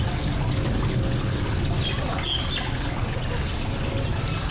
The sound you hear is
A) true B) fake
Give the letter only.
A